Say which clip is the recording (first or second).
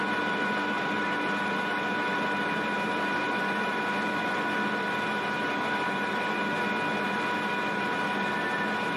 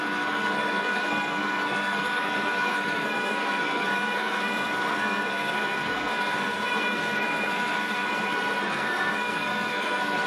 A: first